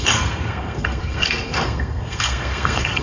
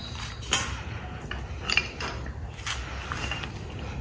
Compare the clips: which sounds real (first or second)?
second